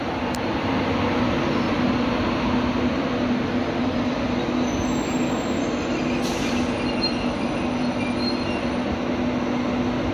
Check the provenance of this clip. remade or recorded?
recorded